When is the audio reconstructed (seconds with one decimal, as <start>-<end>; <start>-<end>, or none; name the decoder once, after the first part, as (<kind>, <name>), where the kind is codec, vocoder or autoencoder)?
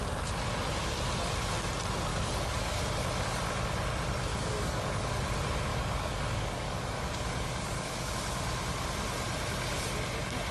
2.1-2.8 (codec, DAC); 4.3-5.2; 5.7-8.1